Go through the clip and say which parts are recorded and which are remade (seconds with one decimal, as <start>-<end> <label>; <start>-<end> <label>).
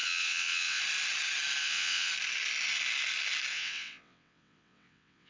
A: 0.0-0.8 remade; 0.8-1.6 recorded; 1.6-2.1 remade; 2.1-3.5 recorded; 3.5-5.3 remade